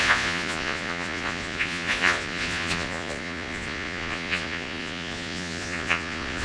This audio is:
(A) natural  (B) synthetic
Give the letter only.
B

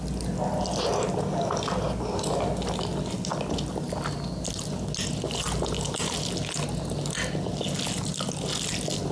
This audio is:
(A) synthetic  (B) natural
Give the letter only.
B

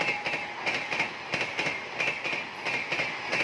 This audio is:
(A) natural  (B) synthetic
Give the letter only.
A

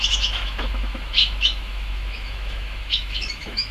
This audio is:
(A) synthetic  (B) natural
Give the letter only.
A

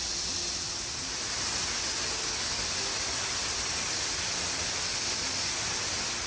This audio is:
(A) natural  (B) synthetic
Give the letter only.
A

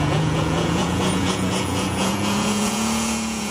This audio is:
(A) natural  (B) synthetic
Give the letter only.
B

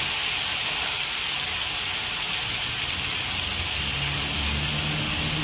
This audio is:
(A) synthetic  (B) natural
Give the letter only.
B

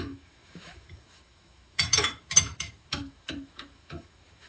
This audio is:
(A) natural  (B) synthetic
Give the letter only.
B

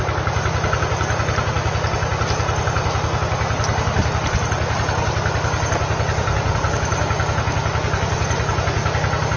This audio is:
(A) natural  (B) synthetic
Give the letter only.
A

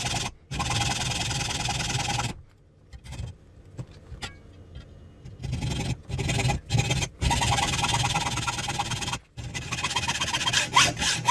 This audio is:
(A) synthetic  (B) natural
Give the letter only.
B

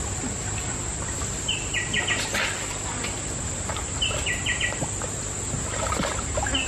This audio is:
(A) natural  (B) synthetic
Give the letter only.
A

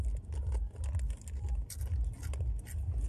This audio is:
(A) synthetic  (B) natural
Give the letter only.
B